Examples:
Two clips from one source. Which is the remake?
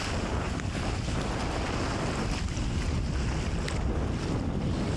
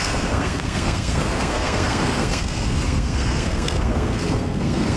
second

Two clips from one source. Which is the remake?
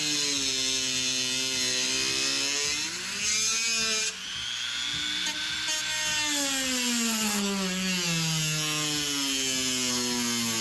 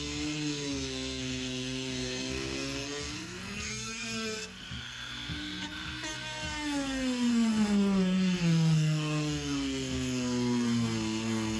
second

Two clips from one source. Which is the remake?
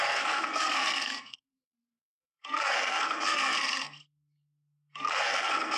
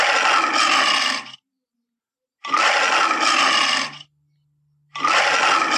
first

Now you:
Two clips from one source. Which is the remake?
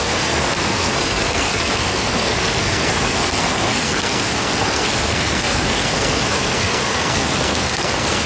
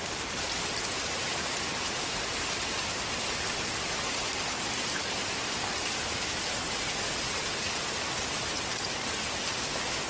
first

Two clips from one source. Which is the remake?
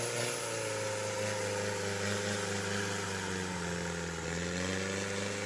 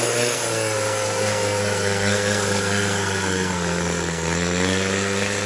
second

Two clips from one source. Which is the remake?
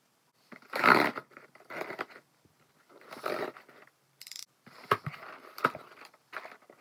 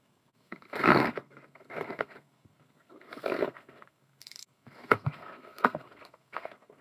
second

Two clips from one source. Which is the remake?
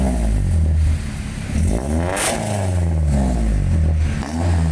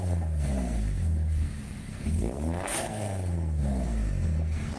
second